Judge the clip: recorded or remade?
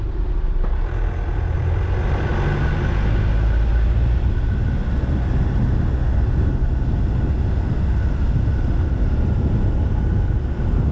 recorded